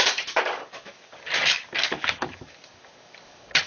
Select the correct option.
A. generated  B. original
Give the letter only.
A